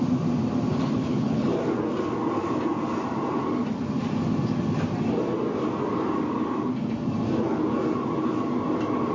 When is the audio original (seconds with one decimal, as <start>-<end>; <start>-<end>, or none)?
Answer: 0.0-0.7; 1.5-9.1